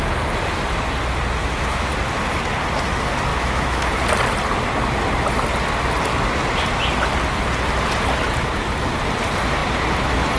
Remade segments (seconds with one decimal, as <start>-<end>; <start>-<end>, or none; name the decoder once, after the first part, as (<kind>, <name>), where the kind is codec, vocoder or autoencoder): 1.4-1.9 (autoencoder, DAC-VAE); 3.3-4.0